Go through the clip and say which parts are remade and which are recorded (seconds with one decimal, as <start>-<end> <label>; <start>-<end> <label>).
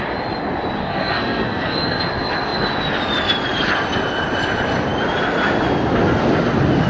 0.0-0.8 recorded; 0.8-2.0 remade; 2.0-6.9 recorded